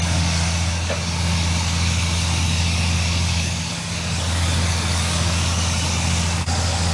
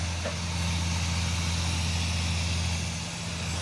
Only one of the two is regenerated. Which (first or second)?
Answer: first